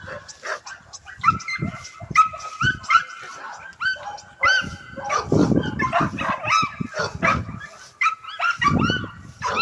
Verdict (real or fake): real